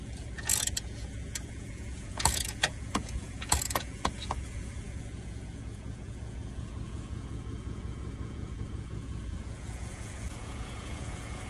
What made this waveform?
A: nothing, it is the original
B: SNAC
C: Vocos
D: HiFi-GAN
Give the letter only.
C